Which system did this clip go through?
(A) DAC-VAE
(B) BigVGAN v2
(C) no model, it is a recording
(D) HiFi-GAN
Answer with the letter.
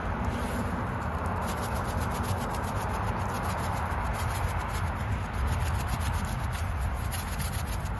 C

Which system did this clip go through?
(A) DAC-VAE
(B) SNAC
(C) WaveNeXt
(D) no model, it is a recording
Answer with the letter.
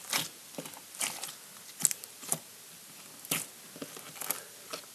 D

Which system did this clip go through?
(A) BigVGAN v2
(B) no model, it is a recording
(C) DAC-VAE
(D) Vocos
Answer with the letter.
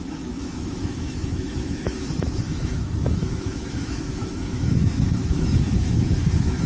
C